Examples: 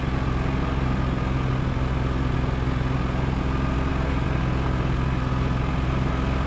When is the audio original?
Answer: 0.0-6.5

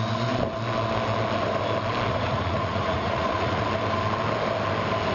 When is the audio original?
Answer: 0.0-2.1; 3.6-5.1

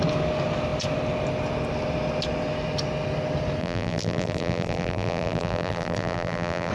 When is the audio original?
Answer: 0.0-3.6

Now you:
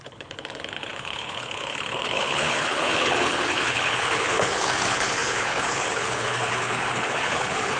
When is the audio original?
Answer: none

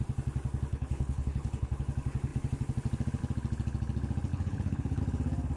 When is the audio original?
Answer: 0.0-0.7; 1.8-4.3; 5.0-5.6

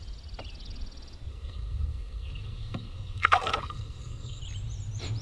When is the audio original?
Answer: 0.0-1.3; 4.4-5.2

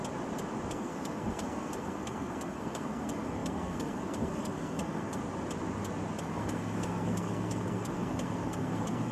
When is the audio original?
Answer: 0.0-0.7; 5.2-6.2